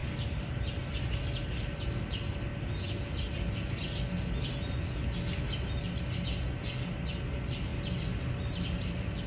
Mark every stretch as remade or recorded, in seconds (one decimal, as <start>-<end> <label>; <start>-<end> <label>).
0.0-9.3 recorded

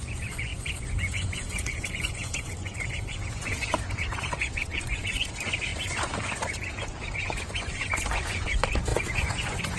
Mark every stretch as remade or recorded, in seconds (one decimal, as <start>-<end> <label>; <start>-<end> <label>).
0.0-9.8 remade

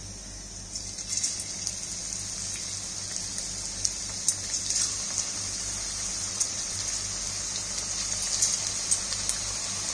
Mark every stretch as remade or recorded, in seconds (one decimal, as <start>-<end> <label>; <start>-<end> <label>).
0.0-6.3 recorded; 6.3-6.8 remade; 6.8-9.9 recorded